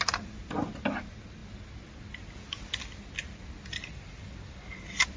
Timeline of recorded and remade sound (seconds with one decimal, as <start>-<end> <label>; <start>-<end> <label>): 0.0-5.2 recorded